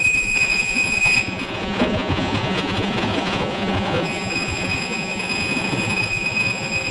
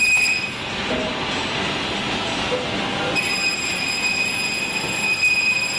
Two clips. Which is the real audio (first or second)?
second